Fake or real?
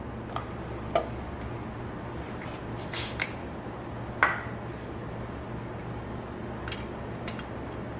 real